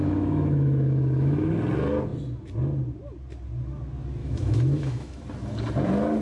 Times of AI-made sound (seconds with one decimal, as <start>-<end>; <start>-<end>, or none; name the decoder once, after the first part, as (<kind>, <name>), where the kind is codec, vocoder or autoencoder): 0.0-1.5 (autoencoder, DAC-VAE); 4.2-5.2